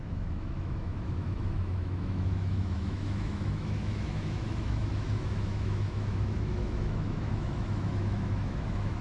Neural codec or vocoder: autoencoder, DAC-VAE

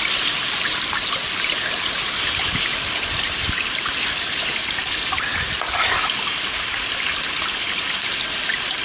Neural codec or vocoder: none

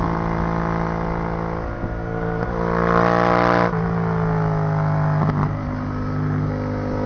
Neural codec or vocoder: none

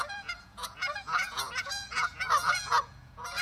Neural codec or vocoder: vocoder, Vocos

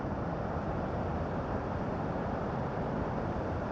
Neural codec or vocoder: none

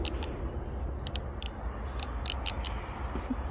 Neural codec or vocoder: none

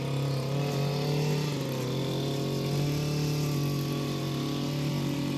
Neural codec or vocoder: none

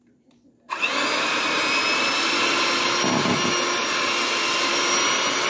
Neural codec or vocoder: none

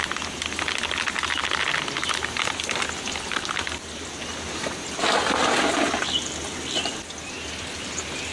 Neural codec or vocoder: none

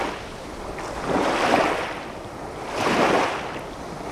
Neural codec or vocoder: none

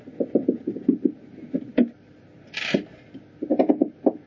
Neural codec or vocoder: none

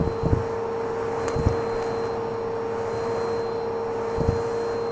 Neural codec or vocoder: none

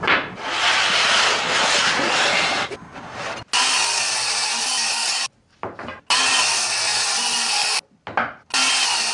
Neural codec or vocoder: none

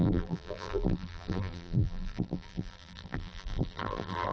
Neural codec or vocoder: vocoder, BigVGAN v2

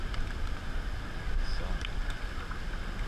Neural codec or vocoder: none